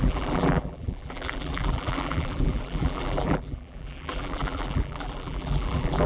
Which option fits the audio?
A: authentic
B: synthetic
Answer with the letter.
B